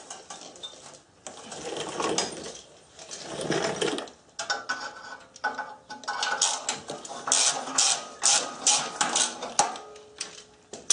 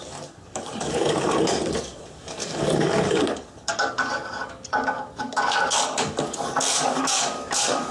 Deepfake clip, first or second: second